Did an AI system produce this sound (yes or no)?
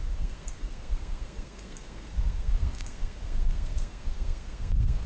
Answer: yes